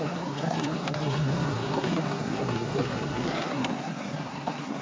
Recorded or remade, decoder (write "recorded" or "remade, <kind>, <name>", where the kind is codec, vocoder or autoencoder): remade, codec, SNAC